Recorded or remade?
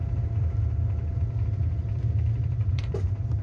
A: remade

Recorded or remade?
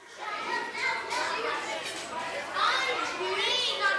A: recorded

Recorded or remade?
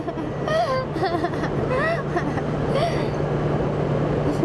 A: recorded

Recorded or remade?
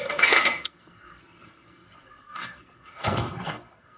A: remade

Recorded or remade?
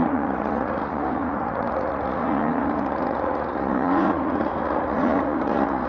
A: remade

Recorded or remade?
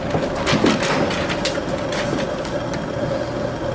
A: recorded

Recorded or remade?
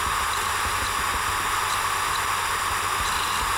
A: recorded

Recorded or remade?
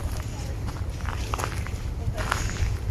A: recorded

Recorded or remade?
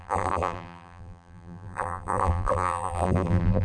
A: remade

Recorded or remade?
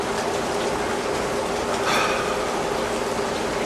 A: recorded